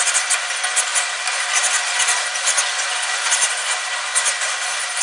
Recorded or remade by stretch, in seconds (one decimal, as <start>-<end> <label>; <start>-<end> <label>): 0.0-5.0 recorded